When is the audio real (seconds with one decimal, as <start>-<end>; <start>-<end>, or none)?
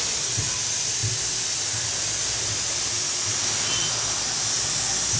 0.0-5.2